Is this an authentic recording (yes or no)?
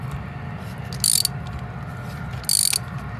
yes